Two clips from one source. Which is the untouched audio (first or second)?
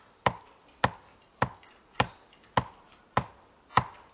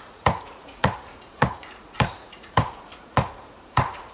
first